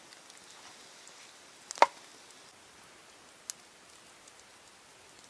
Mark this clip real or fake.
real